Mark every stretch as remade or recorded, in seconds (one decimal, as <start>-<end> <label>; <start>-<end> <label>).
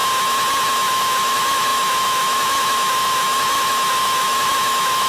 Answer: 0.0-0.9 recorded; 0.9-5.1 remade